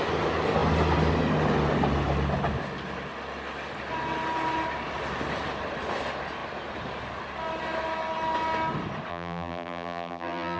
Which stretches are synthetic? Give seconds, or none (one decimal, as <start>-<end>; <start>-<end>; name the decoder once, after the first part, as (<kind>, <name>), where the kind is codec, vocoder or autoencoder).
9.1-10.6 (vocoder, BigVGAN v2)

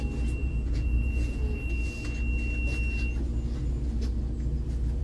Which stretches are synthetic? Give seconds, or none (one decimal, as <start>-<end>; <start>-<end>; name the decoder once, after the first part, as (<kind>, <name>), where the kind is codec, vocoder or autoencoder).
0.4-1.6 (vocoder, Vocos)

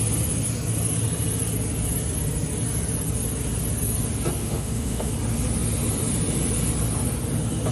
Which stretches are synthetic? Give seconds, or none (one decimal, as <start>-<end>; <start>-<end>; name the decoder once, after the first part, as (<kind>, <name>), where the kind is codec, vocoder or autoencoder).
4.4-5.1 (autoencoder, DAC-VAE)

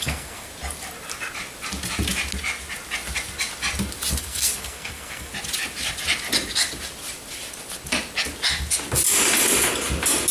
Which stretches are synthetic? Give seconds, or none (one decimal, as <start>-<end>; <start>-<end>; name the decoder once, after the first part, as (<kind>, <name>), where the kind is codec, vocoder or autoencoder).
0.0-0.5 (codec, SNAC); 4.1-5.3

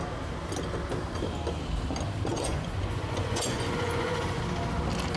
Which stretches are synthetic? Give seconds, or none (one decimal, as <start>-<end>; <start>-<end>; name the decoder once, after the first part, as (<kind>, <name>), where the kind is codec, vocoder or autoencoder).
2.3-4.4 (vocoder, Vocos)